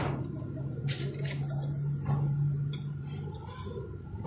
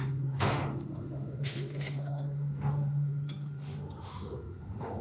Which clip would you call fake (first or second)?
second